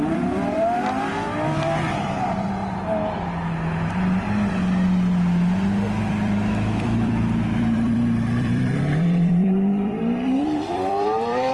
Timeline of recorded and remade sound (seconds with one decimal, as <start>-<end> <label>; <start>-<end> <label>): 0.0-2.6 remade; 2.6-6.0 recorded; 6.0-11.5 remade